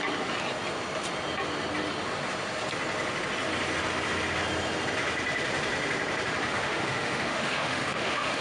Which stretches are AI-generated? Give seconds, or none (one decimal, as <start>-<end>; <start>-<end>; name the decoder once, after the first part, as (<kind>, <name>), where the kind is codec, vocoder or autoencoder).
6.5-8.4 (autoencoder, DAC-VAE)